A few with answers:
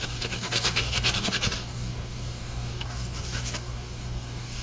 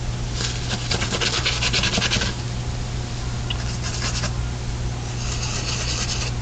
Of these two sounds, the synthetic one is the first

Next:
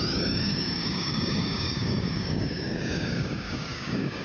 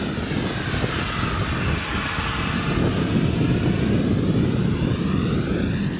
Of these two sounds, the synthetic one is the first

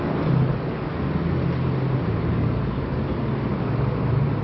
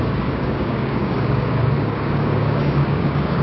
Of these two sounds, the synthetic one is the second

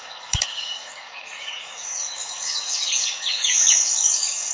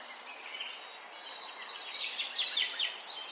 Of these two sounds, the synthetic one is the first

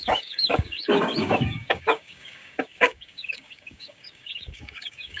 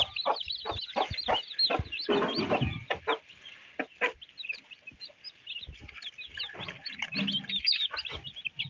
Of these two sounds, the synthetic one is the first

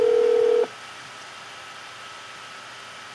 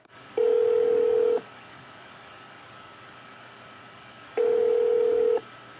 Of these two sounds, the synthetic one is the second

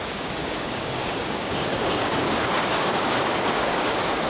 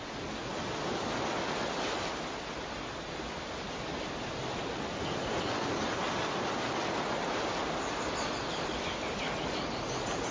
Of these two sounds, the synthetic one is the first